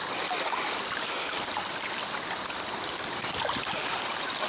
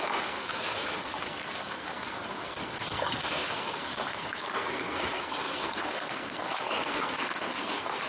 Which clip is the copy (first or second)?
second